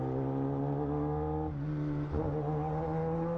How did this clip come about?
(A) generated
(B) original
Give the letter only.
B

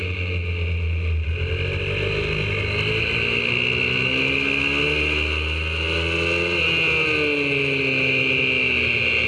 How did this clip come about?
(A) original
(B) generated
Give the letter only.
A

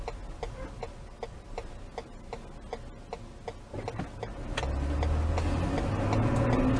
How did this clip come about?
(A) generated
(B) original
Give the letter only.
B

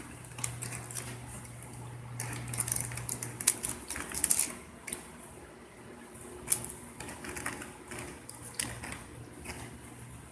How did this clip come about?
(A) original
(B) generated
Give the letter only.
A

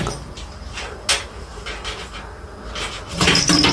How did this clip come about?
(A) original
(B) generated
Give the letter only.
A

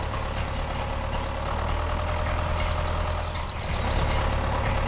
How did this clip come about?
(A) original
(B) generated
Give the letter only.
A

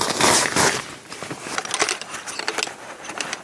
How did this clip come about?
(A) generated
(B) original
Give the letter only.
B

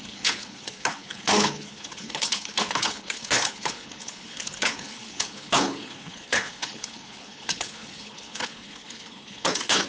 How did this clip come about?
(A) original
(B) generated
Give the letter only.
B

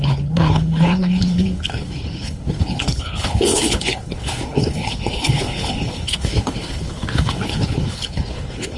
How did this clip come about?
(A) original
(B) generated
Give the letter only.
B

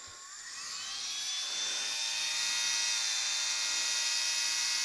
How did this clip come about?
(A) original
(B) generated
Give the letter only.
A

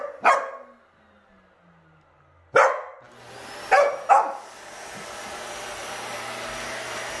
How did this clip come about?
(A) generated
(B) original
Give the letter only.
B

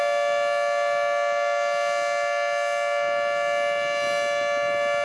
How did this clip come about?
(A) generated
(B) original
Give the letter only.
B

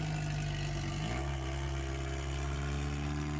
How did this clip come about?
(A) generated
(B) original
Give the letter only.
B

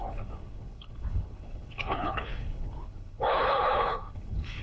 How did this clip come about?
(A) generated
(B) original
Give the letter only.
A